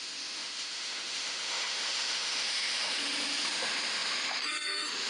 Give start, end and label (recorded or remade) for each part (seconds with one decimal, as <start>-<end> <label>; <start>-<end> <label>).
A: 0.0-5.1 remade